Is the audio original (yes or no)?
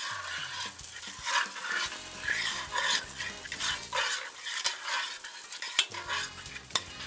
yes